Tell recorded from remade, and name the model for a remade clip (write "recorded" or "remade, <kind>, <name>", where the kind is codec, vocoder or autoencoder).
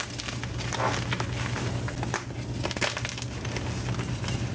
recorded